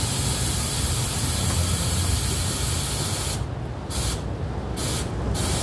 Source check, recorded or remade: recorded